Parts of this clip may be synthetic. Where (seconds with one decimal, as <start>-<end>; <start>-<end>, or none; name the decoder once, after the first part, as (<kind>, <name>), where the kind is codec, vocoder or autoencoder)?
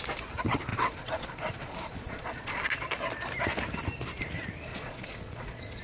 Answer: 0.7-2.9 (vocoder, Vocos); 4.7-5.8